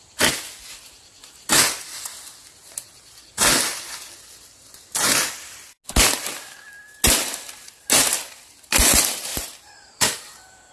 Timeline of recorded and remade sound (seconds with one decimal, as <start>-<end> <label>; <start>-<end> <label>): 0.0-9.3 recorded; 9.3-10.7 remade